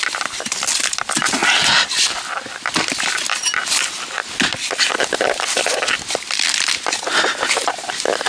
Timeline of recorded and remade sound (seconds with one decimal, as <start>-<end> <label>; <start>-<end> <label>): 0.0-8.3 recorded